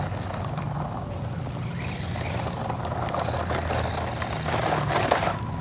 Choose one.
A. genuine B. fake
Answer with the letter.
A